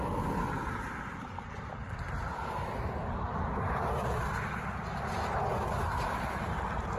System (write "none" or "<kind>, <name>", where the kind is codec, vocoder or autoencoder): none